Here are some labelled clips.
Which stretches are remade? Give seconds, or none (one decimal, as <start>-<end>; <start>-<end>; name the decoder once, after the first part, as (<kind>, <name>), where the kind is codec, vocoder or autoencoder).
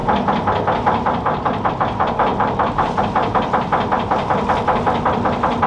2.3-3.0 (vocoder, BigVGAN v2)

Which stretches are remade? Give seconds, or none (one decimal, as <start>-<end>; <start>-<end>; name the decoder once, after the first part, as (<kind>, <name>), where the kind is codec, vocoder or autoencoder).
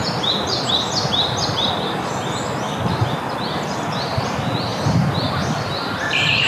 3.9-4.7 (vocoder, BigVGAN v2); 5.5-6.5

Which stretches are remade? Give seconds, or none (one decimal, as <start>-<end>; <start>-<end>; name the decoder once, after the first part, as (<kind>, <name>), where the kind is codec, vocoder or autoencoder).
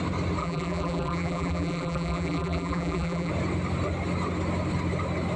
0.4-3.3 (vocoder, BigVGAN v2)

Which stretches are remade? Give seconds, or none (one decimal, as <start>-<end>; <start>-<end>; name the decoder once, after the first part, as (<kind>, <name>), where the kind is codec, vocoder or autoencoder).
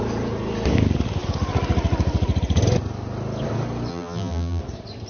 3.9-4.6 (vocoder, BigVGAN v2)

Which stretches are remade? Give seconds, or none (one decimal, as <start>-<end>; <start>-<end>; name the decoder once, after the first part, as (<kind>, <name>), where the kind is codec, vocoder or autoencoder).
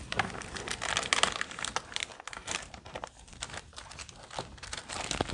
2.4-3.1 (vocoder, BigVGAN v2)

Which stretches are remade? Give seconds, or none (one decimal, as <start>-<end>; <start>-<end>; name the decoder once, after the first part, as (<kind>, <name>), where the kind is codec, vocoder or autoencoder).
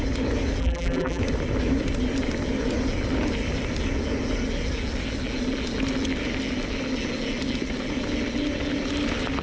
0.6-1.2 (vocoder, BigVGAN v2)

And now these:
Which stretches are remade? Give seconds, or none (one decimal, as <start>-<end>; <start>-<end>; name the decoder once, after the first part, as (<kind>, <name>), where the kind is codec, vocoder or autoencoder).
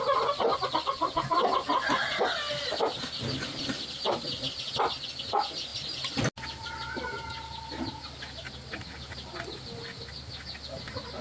5.7-6.2 (vocoder, BigVGAN v2)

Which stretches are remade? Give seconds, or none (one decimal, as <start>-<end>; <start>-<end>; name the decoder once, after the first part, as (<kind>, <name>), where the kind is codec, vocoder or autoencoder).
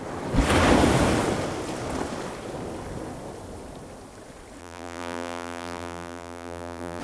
4.6-7.0 (vocoder, BigVGAN v2)